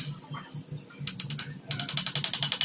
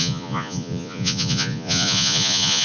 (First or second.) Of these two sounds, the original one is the first